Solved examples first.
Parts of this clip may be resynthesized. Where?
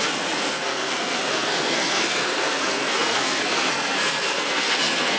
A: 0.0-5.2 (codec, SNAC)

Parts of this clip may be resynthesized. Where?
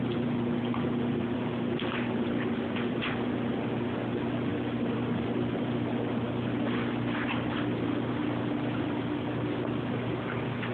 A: none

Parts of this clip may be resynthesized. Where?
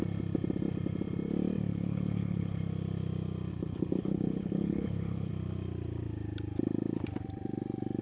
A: 1.7-2.6 (codec, HILCodec); 3.5-5.3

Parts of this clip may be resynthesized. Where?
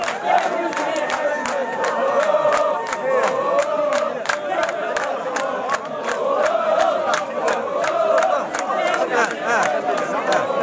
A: 1.6-2.3 (vocoder, BigVGAN v2)